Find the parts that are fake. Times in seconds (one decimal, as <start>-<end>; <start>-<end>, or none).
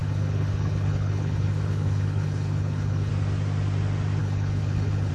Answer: 0.0-3.1; 4.2-5.1